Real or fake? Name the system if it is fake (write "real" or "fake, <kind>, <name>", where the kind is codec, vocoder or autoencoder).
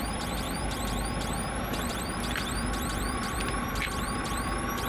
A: fake, vocoder, BigVGAN v2